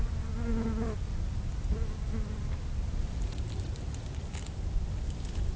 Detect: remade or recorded recorded